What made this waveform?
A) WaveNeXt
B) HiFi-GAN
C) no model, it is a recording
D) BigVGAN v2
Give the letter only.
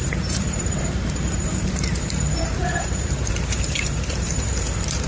D